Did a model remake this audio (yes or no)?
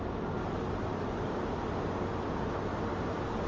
no